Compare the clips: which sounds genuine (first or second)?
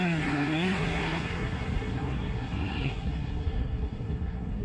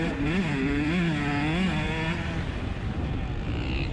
second